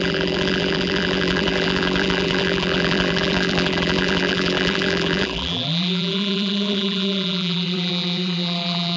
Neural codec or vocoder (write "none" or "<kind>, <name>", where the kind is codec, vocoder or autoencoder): vocoder, BigVGAN v2